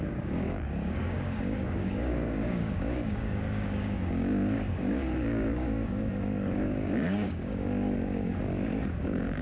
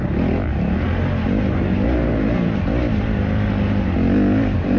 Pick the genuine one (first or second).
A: second